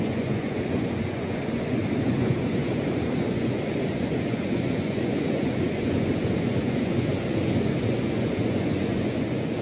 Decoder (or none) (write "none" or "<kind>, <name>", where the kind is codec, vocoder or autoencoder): vocoder, Vocos